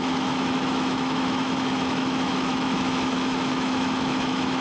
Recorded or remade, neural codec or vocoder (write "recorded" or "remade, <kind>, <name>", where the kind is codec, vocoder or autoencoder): remade, autoencoder, DAC-VAE